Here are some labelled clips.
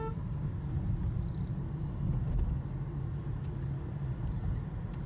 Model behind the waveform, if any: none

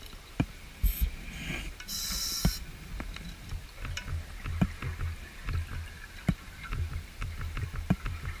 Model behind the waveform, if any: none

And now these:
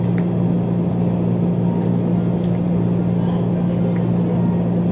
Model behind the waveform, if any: none